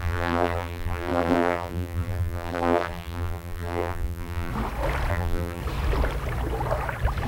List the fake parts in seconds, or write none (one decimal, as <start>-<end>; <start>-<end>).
0.0-4.5; 5.1-5.6